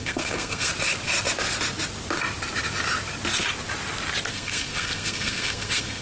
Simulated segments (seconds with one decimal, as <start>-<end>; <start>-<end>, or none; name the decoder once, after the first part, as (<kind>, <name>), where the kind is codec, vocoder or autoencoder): 0.0-0.7 (codec, SNAC); 4.3-6.0